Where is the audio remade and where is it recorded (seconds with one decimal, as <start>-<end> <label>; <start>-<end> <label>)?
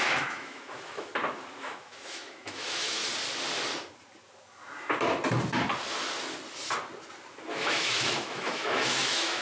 0.0-1.1 remade; 1.1-1.6 recorded; 1.6-3.0 remade; 3.0-7.5 recorded; 7.5-9.4 remade